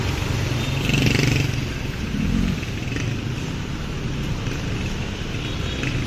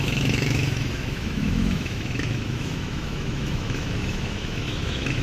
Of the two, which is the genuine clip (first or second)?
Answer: first